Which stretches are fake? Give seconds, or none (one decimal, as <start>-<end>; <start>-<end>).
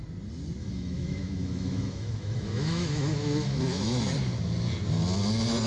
0.6-4.0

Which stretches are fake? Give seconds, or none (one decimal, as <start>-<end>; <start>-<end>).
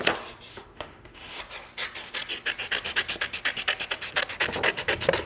0.5-1.4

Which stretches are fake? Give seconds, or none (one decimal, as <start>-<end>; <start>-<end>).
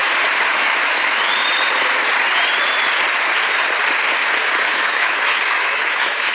0.5-1.3; 4.6-6.3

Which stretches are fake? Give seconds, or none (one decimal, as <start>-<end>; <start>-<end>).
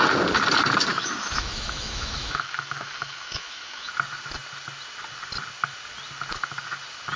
0.9-3.9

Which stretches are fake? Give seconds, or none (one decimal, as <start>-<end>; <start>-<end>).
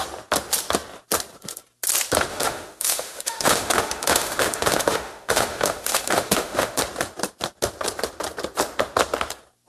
2.3-6.8